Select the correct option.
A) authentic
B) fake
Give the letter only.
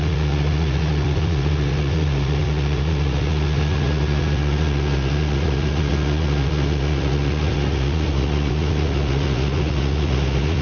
B